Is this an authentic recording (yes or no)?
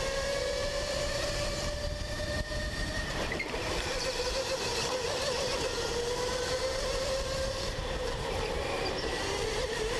no